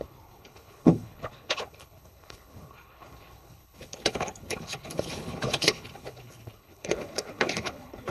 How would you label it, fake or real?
fake